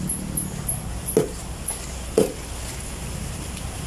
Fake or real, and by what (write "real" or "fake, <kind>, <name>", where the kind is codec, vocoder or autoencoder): real